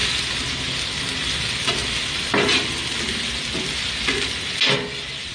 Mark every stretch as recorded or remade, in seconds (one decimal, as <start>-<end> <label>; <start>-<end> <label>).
0.0-5.3 recorded